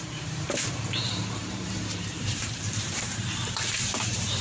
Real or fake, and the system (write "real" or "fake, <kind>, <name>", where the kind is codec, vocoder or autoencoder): fake, vocoder, BigVGAN v2